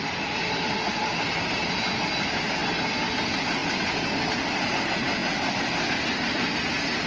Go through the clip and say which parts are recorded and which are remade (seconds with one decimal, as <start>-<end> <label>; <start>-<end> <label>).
0.0-7.1 recorded